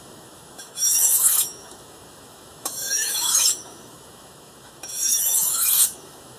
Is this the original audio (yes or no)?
no